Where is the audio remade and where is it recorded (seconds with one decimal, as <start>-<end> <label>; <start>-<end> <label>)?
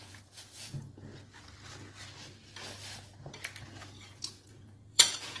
0.0-1.1 remade; 1.1-4.1 recorded; 4.1-5.4 remade